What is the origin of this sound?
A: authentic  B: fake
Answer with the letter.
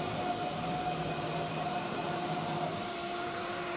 B